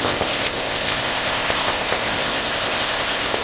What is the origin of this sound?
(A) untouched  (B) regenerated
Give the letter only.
B